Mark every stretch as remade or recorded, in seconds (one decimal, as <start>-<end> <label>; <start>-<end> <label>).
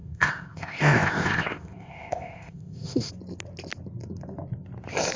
0.0-3.1 remade; 3.1-5.2 recorded